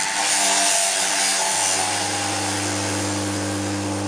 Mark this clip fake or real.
real